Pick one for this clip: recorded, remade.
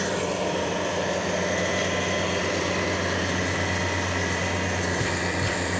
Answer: recorded